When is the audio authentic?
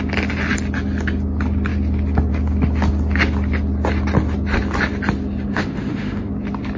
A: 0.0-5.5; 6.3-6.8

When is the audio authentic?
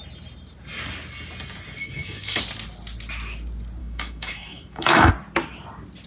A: 0.0-1.8; 2.4-3.8; 5.1-6.1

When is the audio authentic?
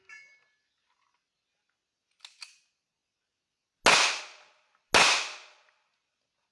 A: 0.0-6.5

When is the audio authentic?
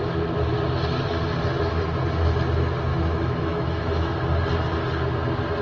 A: 0.0-2.9; 4.2-5.6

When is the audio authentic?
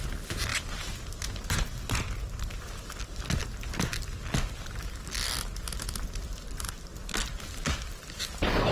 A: 0.0-8.7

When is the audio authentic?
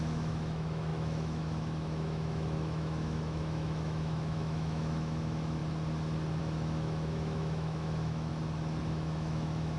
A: 5.6-6.4; 8.3-8.8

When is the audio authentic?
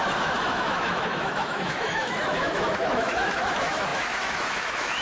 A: none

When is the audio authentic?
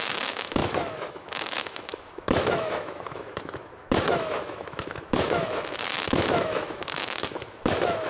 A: none